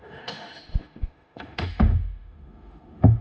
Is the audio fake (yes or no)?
yes